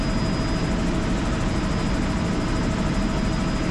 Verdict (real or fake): real